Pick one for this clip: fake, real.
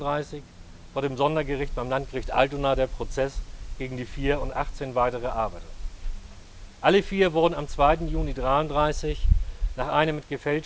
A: real